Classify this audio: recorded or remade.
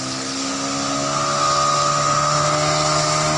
recorded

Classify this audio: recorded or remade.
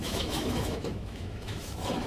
remade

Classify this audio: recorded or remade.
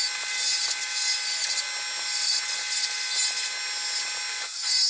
recorded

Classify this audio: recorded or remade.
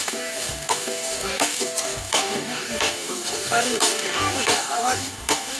remade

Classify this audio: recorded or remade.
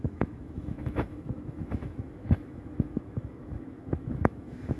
remade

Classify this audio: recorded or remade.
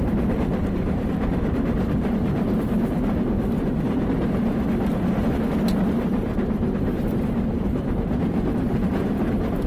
remade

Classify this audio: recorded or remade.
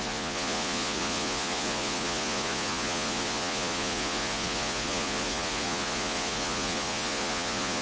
remade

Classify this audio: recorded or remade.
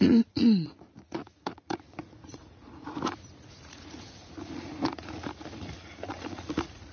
remade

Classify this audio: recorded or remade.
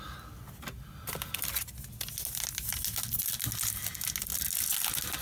recorded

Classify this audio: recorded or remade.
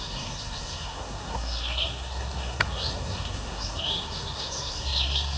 remade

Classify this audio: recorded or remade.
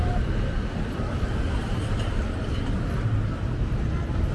recorded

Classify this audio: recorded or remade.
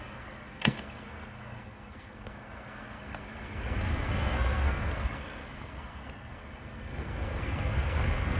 remade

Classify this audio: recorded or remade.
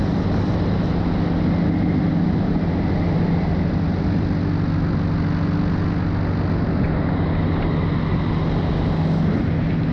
recorded